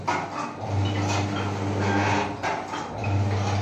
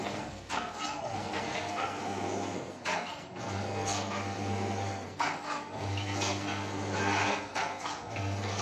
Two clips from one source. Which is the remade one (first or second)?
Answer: second